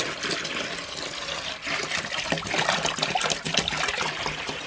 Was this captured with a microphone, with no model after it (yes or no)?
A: yes